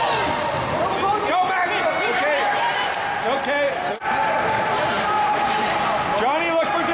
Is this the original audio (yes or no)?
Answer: yes